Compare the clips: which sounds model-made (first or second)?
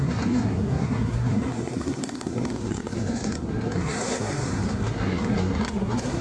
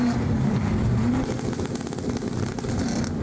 first